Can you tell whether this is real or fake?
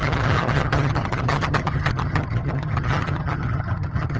fake